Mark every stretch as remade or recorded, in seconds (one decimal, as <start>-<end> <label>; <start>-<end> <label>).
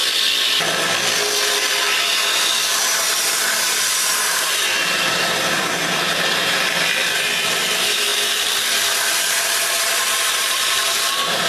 0.0-2.6 recorded; 2.6-11.5 remade